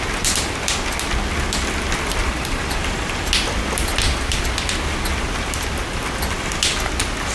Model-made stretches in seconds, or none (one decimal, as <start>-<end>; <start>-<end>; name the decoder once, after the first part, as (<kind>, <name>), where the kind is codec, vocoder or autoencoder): 2.2-2.8 (vocoder, BigVGAN v2)